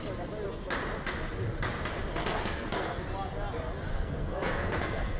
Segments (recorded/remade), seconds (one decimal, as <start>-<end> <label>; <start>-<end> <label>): 0.0-2.2 recorded; 2.2-3.0 remade; 3.0-3.9 recorded; 3.9-5.2 remade